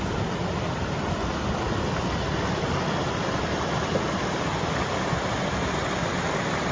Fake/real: fake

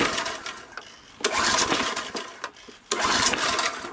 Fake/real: real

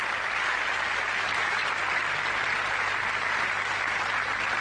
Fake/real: real